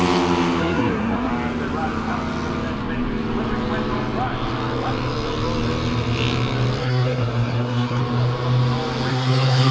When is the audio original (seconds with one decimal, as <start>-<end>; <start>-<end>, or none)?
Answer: 0.0-0.6; 1.3-6.8; 8.0-9.1